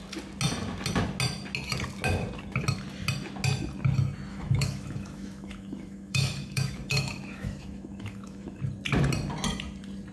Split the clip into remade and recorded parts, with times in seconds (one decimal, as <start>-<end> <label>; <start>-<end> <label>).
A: 0.0-4.3 recorded; 4.3-8.6 remade; 8.6-10.1 recorded